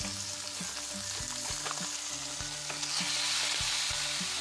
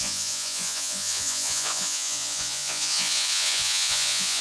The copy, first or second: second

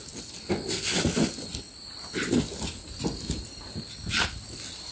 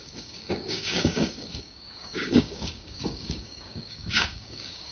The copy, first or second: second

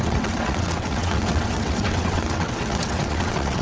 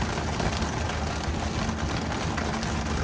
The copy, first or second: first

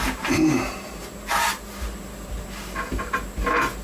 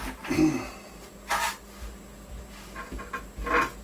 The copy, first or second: first